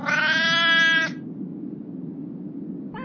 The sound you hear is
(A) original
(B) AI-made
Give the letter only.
A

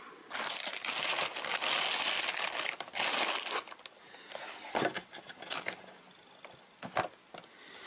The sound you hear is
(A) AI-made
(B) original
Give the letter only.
B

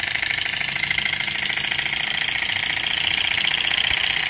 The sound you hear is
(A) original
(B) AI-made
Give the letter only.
A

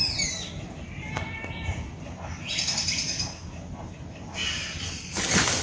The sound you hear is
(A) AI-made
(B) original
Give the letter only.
B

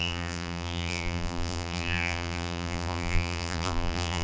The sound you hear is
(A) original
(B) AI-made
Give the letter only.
B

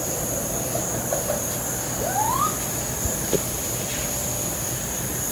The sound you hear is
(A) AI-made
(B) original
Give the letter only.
B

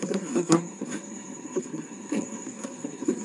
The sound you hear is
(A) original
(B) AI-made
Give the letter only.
B